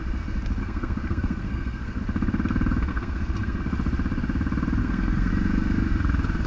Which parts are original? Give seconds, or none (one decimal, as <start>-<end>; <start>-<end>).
0.0-0.6; 2.0-2.9; 3.6-4.8; 5.3-6.5